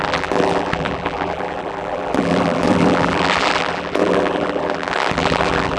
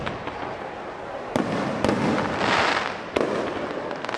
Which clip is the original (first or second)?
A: second